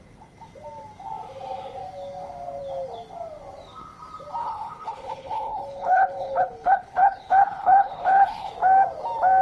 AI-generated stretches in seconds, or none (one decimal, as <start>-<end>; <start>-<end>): 4.4-8.5